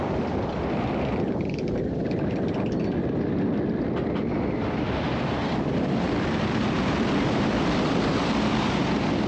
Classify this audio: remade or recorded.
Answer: remade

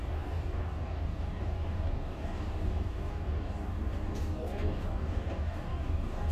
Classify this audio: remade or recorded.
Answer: remade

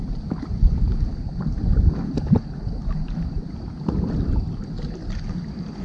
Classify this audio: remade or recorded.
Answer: recorded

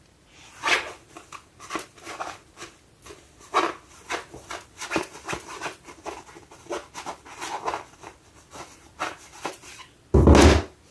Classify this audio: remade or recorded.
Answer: recorded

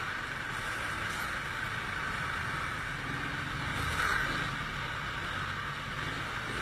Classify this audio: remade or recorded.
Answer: recorded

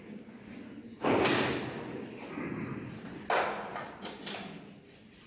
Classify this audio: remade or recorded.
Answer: recorded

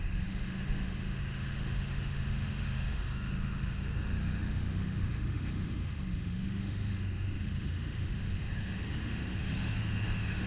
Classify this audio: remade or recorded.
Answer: remade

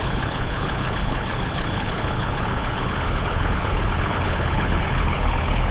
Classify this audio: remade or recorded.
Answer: remade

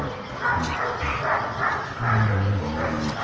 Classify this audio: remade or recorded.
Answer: recorded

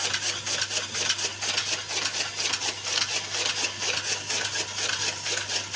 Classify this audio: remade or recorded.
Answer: recorded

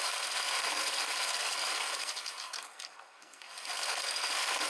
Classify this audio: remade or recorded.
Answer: remade